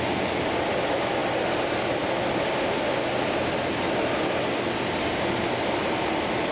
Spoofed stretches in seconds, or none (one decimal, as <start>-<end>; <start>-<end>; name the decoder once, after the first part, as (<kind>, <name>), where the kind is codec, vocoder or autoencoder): none